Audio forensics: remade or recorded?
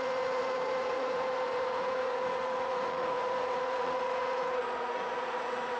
remade